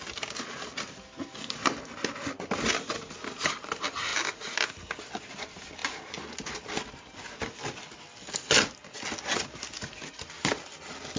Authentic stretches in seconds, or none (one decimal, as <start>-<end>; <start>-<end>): 0.0-11.2